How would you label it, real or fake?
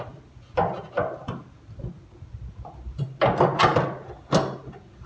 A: real